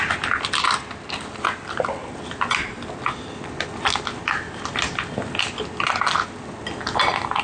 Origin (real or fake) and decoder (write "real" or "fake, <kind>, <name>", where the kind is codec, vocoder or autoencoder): real